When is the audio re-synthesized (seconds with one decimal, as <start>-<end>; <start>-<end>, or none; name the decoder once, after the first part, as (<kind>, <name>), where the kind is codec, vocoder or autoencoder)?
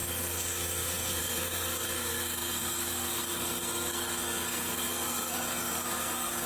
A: 0.0-6.5 (codec, SNAC)